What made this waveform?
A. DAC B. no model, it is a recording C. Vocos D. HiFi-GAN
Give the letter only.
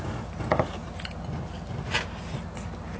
B